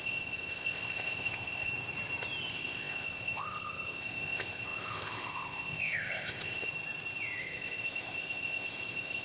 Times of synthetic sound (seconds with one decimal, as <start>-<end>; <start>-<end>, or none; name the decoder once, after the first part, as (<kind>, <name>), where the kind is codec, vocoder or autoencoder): 0.0-1.7 (codec, ZipCodec); 2.5-6.7; 7.4-9.2